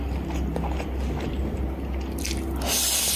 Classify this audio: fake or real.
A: real